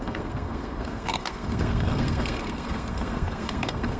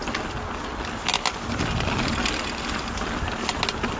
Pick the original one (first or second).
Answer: second